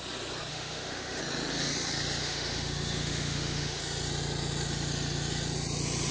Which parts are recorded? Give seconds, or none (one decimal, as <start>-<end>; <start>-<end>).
0.0-0.5; 1.2-2.2; 3.8-6.1